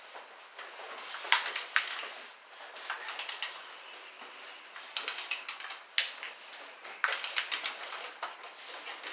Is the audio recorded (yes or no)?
yes